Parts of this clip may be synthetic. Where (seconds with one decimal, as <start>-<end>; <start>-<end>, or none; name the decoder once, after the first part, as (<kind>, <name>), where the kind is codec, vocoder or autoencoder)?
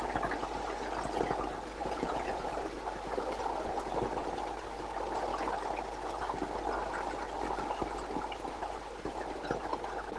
1.8-2.5 (vocoder, Vocos)